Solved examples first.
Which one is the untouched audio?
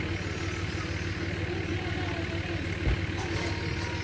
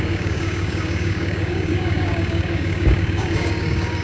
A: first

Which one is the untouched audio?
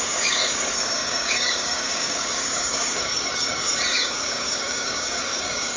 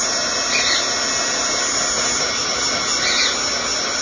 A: second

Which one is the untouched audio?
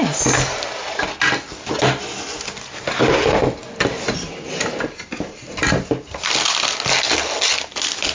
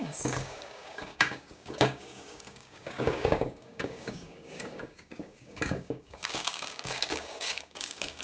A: first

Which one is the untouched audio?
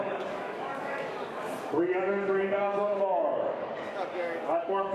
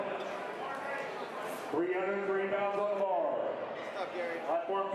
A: second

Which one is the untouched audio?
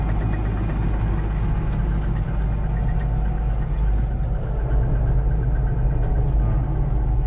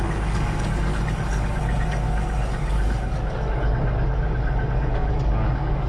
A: first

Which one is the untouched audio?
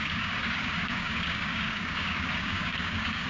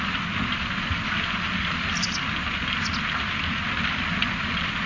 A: second